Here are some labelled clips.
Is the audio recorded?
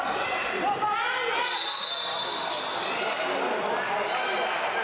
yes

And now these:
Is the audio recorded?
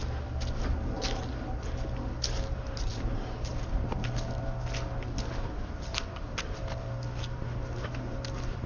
yes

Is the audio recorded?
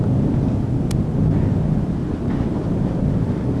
yes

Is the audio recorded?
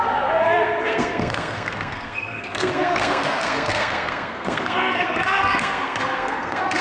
no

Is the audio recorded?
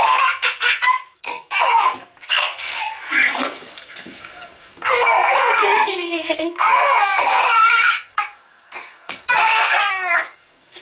no